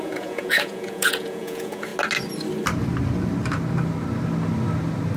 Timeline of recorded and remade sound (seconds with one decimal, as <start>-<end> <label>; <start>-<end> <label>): 0.0-1.9 remade; 1.9-5.2 recorded

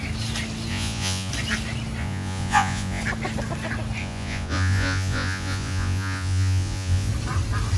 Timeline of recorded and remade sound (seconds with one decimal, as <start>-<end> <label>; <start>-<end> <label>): 0.0-0.7 recorded; 0.7-1.3 remade; 1.3-2.0 recorded; 2.0-3.0 remade; 3.0-4.0 recorded; 4.0-7.1 remade; 7.1-7.8 recorded

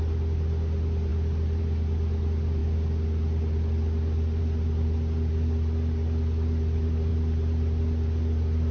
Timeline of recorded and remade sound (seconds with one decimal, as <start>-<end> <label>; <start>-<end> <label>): 0.0-8.7 recorded

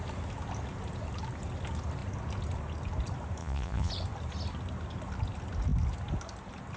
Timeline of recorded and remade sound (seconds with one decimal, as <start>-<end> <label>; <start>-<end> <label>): 0.0-3.4 recorded; 3.4-3.9 remade; 3.9-6.8 recorded

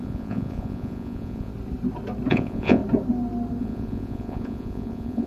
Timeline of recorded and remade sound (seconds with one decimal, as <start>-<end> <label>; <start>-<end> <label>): 0.0-1.5 remade; 1.5-2.3 recorded; 2.3-2.8 remade; 2.8-3.6 recorded; 3.6-5.3 remade

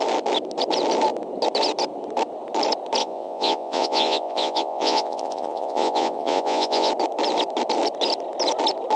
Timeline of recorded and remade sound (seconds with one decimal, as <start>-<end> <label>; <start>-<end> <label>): 0.0-3.0 recorded; 3.0-6.9 remade; 6.9-9.0 recorded

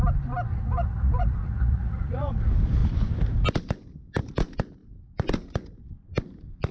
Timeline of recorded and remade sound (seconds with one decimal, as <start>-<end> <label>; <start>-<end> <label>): 0.0-0.5 recorded; 0.5-2.3 remade; 2.3-6.7 recorded

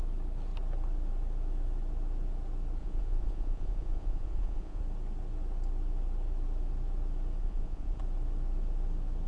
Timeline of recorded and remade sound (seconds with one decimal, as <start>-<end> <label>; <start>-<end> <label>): 0.0-2.8 recorded; 2.8-4.8 remade; 4.8-7.4 recorded; 7.4-8.0 remade; 8.0-9.3 recorded